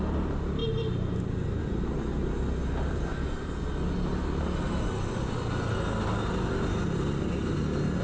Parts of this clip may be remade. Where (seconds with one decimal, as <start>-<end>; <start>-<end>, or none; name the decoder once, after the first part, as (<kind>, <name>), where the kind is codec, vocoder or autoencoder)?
none